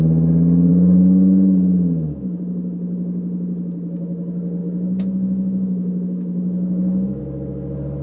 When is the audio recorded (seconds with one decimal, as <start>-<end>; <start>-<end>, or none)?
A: 0.0-0.7; 2.4-4.6; 7.2-8.0